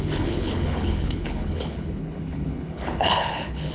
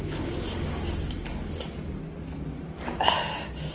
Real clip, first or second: second